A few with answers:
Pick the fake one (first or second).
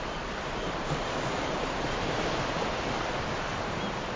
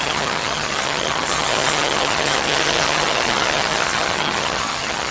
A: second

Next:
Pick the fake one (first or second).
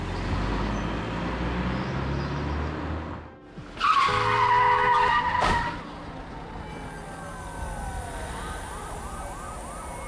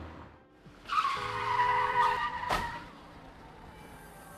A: second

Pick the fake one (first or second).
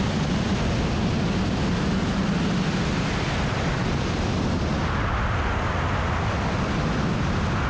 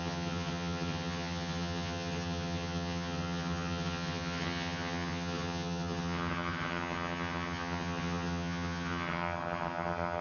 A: second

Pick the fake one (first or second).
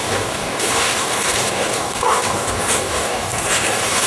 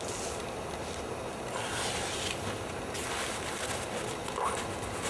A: first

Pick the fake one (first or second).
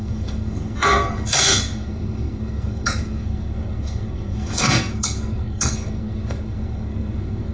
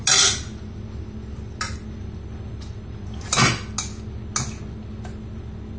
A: first